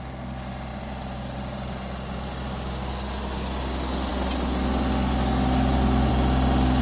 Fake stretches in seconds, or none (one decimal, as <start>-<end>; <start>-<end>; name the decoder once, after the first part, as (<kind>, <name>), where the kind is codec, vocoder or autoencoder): none